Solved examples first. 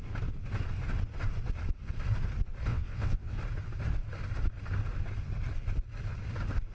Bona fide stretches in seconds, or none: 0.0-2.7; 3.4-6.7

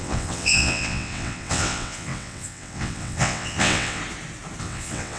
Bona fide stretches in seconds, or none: 4.0-4.6

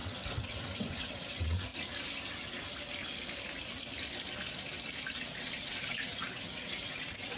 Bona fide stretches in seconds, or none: 1.7-5.2

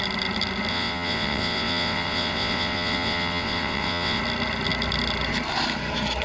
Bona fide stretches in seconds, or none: 0.0-0.7; 4.2-6.2

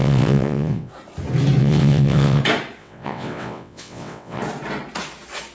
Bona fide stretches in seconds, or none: 0.9-1.6; 2.4-2.8; 4.4-5.5

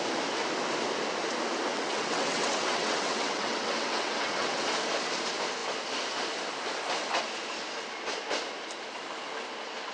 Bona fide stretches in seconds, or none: 0.0-1.7; 4.7-9.9